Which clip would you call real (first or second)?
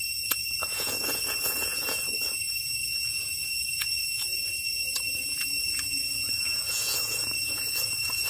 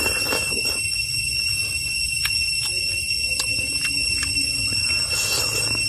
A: second